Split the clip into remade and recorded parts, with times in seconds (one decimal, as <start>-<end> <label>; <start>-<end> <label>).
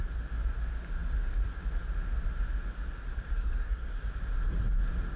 0.0-3.3 recorded; 3.3-4.0 remade; 4.0-5.2 recorded